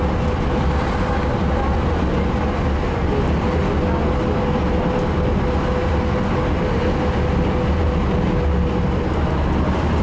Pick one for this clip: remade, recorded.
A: recorded